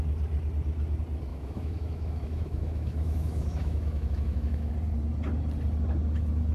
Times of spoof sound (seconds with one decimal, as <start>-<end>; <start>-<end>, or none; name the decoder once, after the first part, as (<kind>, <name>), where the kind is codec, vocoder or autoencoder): 1.3-4.7 (autoencoder, DAC-VAE)